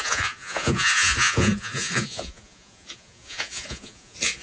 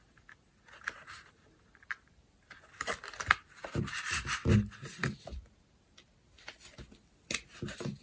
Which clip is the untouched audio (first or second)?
second